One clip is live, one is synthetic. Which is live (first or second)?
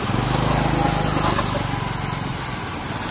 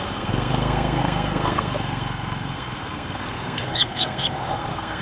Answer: first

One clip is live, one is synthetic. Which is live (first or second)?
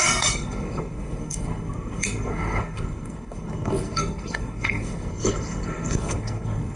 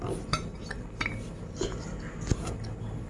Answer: second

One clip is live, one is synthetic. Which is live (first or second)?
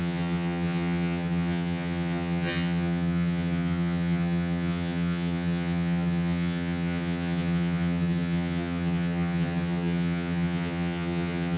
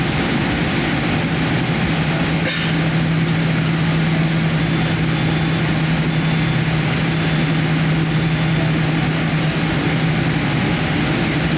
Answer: second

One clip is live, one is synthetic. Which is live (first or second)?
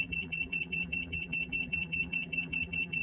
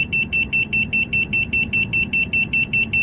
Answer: second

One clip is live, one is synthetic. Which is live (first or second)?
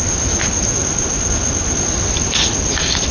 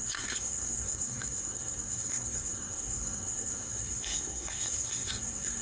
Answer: first